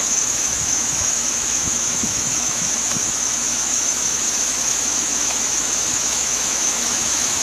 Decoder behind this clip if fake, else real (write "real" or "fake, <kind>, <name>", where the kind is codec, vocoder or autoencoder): fake, autoencoder, DAC-VAE